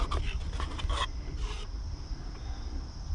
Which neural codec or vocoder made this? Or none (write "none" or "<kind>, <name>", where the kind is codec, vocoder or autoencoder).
none